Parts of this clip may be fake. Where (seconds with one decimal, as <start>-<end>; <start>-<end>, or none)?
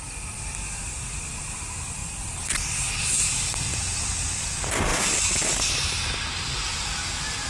2.0-3.1; 4.9-5.7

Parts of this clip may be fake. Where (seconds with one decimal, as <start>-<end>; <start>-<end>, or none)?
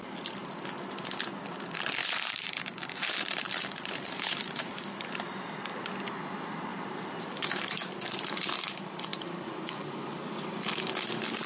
2.0-5.1; 6.7-8.2; 9.1-10.5